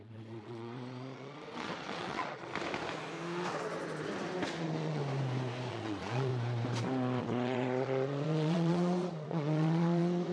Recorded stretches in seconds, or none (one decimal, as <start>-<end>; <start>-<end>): 2.5-4.6; 5.0-5.7; 6.3-7.2